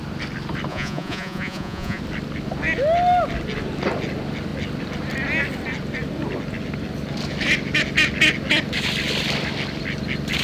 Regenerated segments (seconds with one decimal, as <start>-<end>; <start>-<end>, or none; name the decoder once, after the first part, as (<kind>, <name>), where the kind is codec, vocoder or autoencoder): 0.7-2.0 (vocoder, Vocos)